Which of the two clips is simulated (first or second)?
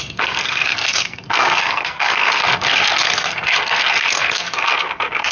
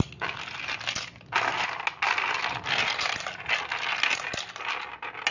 first